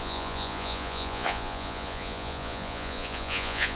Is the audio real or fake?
fake